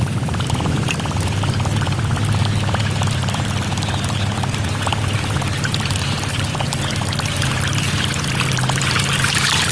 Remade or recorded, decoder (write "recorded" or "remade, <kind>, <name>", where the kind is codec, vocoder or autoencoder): remade, vocoder, BigVGAN v2